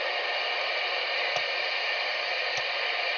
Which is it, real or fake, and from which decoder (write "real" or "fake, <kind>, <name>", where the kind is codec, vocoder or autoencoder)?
real